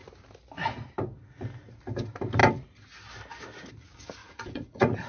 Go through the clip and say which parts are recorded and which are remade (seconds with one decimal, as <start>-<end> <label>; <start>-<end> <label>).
0.0-4.2 recorded; 4.2-5.1 remade